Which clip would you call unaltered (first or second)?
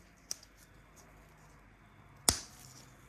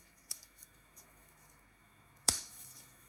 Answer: first